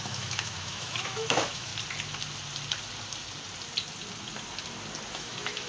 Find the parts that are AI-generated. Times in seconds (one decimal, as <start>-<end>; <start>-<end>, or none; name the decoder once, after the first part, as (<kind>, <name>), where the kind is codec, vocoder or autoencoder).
0.0-1.7 (autoencoder, DAC-VAE); 5.1-5.7